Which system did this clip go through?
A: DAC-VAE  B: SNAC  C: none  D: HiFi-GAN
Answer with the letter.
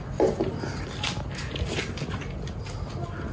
C